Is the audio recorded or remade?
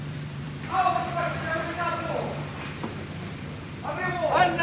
remade